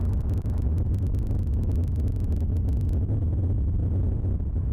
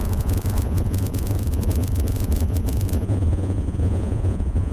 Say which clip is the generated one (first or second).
second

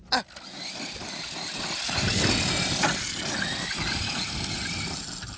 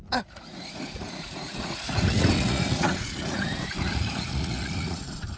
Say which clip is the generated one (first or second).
second